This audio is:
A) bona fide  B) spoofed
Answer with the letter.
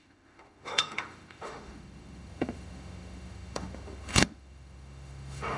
B